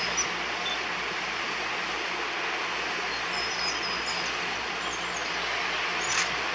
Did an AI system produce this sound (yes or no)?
no